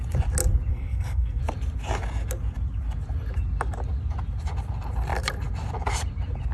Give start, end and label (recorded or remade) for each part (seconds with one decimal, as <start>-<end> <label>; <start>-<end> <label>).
0.0-0.7 recorded; 0.7-1.4 remade; 1.4-6.5 recorded